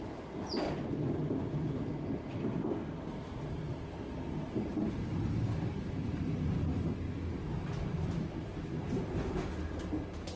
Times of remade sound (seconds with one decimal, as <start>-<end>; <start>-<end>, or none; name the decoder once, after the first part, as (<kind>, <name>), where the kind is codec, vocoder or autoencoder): none